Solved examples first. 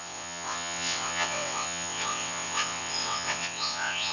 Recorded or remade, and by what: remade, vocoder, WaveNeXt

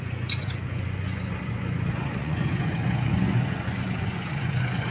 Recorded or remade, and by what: remade, vocoder, Vocos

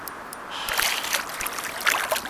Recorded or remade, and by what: recorded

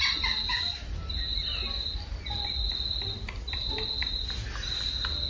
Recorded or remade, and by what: recorded